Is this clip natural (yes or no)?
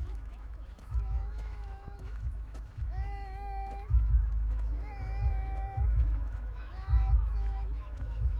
no